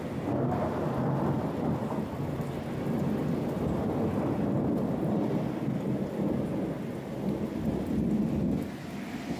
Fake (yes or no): no